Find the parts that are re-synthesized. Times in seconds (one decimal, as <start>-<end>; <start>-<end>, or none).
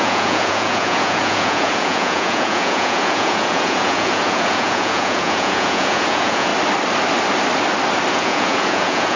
0.0-6.5; 8.1-9.2